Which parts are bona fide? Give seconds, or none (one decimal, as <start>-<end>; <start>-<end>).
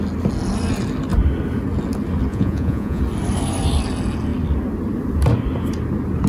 0.0-2.3; 3.0-6.3